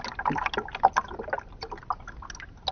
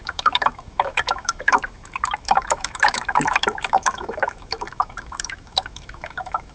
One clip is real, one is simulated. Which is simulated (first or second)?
second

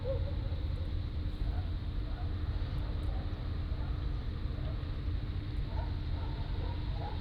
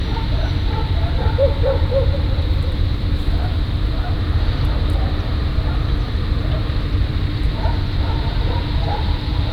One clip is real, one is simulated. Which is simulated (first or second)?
second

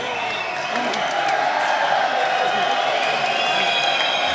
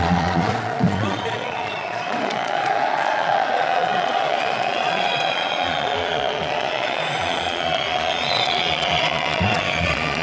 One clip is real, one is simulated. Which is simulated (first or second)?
second